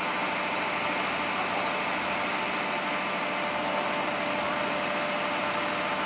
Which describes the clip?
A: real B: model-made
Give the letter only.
A